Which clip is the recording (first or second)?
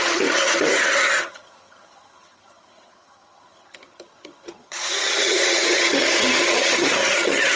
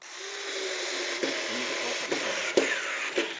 second